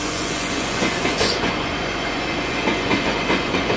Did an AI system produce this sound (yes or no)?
yes